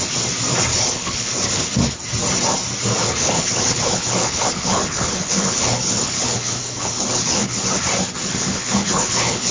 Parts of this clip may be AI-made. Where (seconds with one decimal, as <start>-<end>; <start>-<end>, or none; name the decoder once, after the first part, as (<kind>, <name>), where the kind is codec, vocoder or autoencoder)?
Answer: 0.7-1.6 (codec, HILCodec); 3.0-7.8; 8.2-9.5